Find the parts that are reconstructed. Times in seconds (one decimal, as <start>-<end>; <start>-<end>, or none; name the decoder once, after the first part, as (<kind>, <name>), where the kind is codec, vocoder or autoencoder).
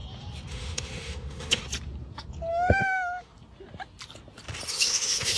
0.5-1.6 (autoencoder, DAC-VAE); 2.5-3.3; 4.7-5.4